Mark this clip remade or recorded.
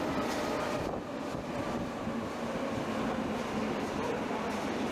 recorded